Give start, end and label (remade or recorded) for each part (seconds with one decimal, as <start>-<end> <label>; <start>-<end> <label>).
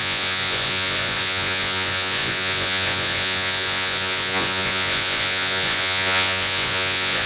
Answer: 0.0-7.3 remade